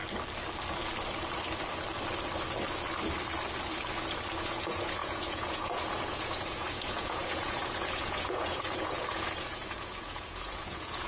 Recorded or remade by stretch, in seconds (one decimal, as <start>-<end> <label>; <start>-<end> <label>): 0.0-4.4 recorded; 4.4-11.1 remade